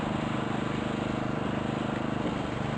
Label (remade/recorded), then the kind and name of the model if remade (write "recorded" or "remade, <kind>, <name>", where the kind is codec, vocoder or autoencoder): recorded